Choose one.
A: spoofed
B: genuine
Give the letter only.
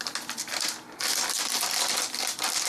B